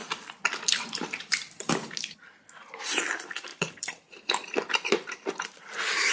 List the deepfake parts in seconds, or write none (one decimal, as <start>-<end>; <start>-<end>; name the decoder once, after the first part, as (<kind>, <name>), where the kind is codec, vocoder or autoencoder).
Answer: 0.0-1.7 (vocoder, BigVGAN v2); 3.5-5.4